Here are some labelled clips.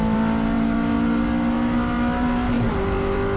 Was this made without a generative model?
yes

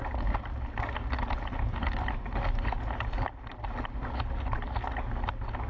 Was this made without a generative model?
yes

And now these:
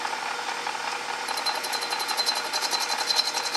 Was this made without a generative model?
yes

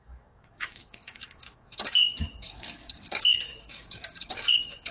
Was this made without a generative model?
no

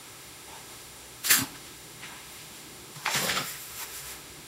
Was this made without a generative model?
no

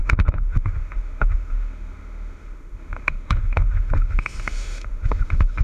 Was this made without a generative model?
no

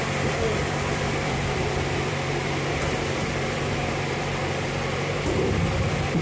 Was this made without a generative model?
no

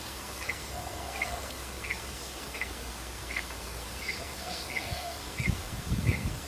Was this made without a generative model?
no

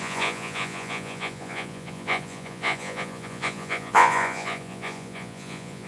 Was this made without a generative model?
no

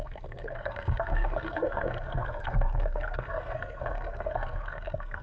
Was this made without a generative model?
no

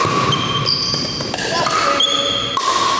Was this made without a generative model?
yes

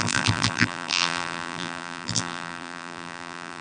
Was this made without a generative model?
no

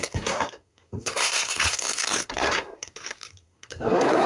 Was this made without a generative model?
no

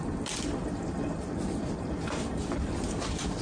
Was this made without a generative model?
no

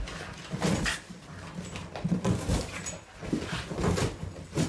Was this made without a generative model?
yes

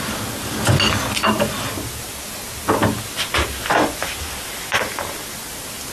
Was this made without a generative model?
yes